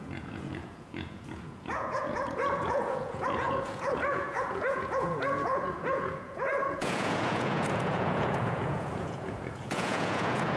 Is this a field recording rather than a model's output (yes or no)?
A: no